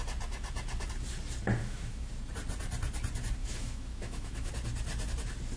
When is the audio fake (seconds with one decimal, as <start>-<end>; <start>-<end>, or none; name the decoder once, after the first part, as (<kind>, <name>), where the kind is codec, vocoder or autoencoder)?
1.6-2.1 (autoencoder, DAC-VAE); 3.4-4.5